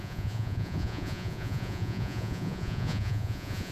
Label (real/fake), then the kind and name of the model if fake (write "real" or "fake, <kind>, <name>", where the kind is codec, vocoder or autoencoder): fake, vocoder, Vocos